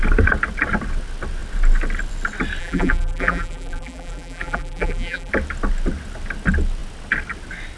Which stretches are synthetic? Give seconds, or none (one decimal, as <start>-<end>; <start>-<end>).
2.6-5.3

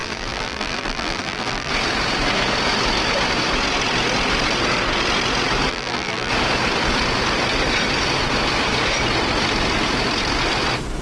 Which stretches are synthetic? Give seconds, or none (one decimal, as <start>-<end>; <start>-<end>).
0.0-1.7; 5.7-6.3

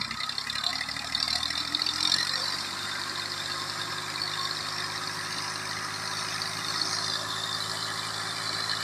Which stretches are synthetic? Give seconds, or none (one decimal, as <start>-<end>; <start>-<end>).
0.7-3.9

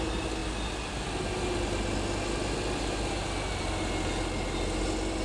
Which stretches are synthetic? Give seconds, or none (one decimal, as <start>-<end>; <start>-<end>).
none

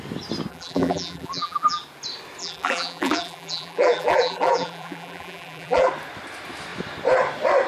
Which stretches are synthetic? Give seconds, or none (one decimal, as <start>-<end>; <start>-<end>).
0.5-1.8; 2.4-5.9

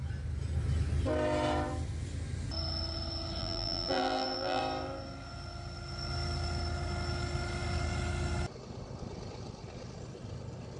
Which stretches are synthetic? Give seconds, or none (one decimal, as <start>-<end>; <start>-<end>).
3.4-4.6

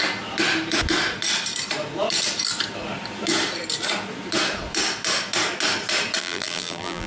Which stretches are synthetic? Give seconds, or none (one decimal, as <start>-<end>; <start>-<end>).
6.2-7.1